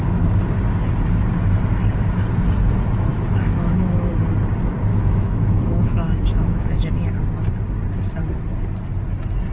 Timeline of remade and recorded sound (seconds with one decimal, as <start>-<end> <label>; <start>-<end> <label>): 0.0-3.1 recorded; 3.1-4.1 remade; 4.1-4.9 recorded; 4.9-6.9 remade; 6.9-9.5 recorded